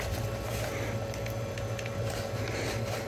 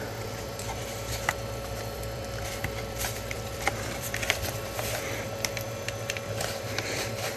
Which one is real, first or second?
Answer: first